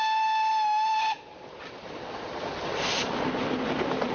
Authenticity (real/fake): real